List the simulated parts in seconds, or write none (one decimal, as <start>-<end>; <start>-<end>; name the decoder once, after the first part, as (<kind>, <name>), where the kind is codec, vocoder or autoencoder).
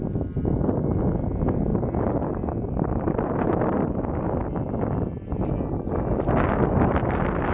none